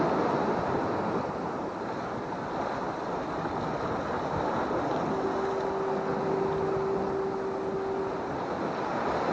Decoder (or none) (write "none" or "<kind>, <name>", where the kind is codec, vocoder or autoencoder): none